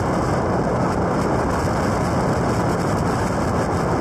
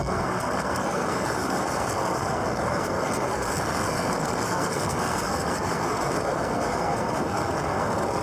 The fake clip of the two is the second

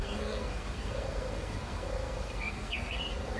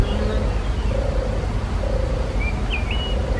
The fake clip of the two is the first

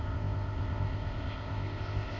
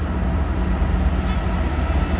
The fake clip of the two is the first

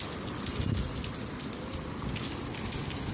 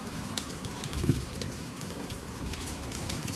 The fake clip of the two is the second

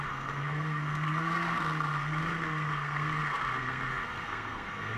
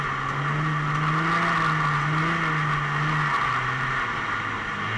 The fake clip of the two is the first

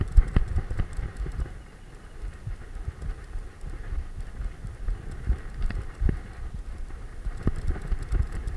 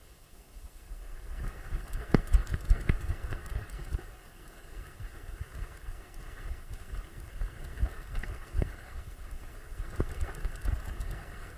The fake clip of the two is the second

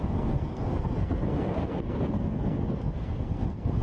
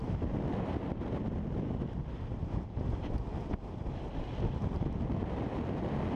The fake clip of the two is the first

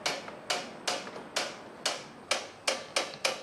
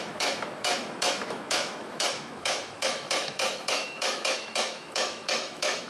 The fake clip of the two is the second